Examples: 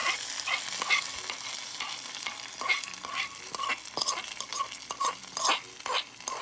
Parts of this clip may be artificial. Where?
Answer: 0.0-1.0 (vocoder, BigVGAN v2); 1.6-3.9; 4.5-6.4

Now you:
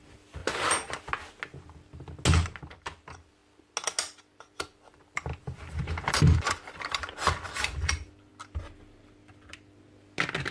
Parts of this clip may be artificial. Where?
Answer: 0.0-0.4 (vocoder, BigVGAN v2); 2.6-3.4; 4.4-8.3

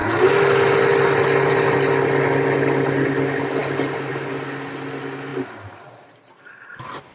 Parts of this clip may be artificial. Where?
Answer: none

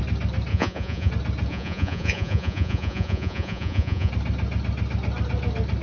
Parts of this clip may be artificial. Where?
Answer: 0.5-1.1 (vocoder, Vocos); 1.5-4.1